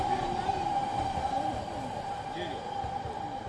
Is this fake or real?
fake